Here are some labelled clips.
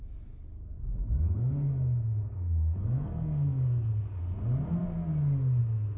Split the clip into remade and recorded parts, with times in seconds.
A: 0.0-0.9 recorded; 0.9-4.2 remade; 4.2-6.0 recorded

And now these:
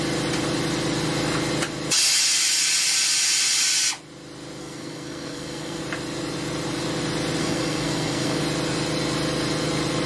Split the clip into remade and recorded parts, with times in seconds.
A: 0.0-4.6 recorded; 4.6-5.8 remade; 5.8-7.4 recorded; 7.4-8.4 remade; 8.4-10.1 recorded

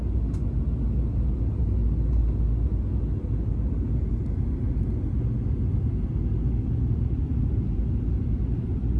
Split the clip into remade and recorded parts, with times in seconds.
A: 0.0-9.0 recorded

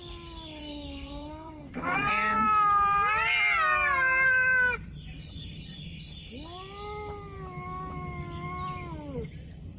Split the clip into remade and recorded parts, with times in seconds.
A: 0.0-0.6 recorded; 0.6-2.1 remade; 2.1-9.8 recorded

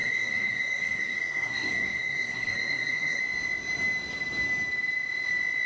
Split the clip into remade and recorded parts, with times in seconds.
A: 0.0-3.2 remade; 3.2-5.7 recorded

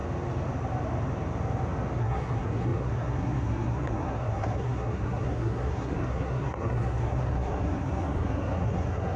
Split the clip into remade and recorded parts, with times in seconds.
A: 0.0-2.0 recorded; 2.0-9.2 remade